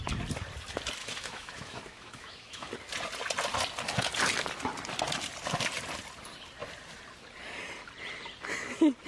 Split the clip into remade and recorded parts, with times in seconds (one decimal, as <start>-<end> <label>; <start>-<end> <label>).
0.0-1.0 recorded; 1.0-2.7 remade; 2.7-9.1 recorded